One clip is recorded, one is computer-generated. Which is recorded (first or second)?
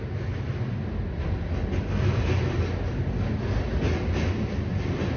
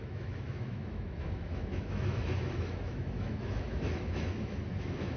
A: first